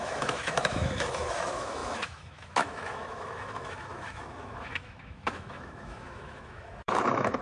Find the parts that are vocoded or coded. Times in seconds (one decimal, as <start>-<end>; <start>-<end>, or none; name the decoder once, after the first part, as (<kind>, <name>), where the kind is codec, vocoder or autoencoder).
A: 0.0-7.4 (autoencoder, DAC-VAE)